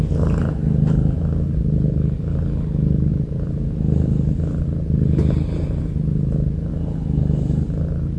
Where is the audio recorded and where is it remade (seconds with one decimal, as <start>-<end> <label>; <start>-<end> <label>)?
0.0-3.1 recorded; 3.1-3.7 remade; 3.7-8.2 recorded